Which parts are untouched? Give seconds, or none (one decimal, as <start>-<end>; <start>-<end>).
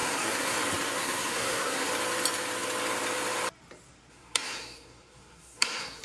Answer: 0.6-1.0; 1.9-4.1